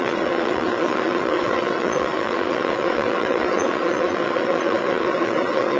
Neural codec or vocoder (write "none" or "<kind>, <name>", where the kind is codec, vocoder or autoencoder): vocoder, Vocos